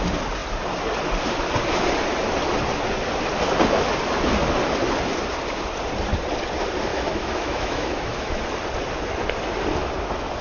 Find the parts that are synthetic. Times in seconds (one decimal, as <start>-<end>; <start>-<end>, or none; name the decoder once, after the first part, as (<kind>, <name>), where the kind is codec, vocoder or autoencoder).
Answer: 6.9-8.4 (autoencoder, DAC-VAE)